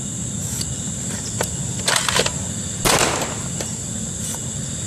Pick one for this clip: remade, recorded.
recorded